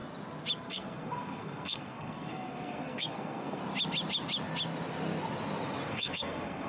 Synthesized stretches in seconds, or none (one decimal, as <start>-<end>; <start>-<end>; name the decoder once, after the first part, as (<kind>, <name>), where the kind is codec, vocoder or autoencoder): 0.7-3.6 (codec, SNAC); 5.9-6.7